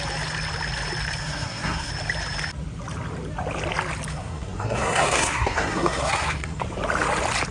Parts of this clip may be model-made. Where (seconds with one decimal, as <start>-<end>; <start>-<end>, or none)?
1.2-1.9; 4.1-6.6